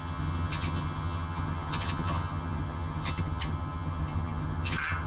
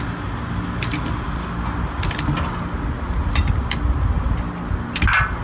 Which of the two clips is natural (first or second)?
second